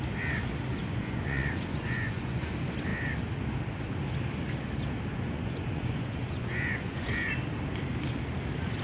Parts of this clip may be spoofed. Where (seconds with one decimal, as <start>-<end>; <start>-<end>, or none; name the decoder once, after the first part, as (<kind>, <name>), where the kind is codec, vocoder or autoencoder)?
0.7-2.5 (vocoder, Vocos); 5.1-7.3